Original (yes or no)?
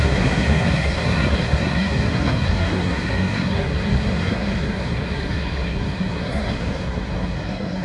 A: no